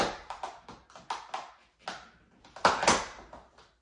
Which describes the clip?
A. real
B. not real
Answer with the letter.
A